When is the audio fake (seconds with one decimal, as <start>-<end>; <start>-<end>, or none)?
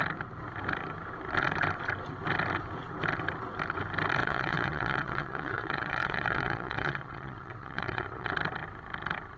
4.2-8.3